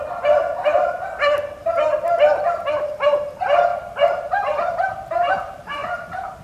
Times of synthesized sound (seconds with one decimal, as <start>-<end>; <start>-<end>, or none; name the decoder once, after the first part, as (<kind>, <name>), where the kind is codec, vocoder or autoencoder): 3.7-5.3 (vocoder, BigVGAN v2); 5.8-6.4